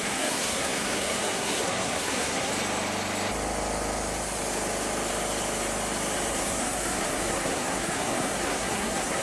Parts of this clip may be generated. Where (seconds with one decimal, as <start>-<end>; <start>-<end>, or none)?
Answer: 0.0-2.5; 6.3-9.2